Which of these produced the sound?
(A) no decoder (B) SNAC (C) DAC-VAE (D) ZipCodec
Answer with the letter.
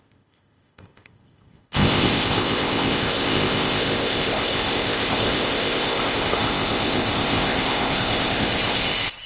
D